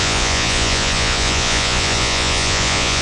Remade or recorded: remade